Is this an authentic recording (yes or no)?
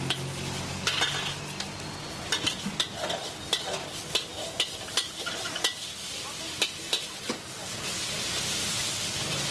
yes